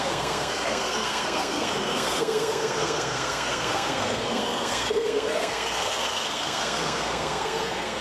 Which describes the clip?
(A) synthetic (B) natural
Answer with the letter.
A